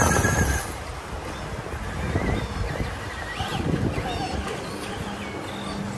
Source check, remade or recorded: recorded